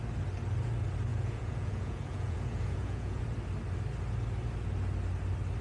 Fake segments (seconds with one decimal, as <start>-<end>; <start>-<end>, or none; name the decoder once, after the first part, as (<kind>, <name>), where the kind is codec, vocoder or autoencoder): 1.1-3.2 (vocoder, Vocos)